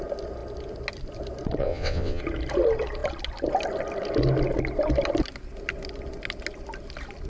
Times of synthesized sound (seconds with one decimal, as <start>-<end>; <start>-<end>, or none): 1.6-2.2